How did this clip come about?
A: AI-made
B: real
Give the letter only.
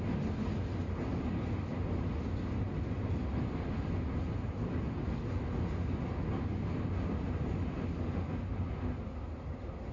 B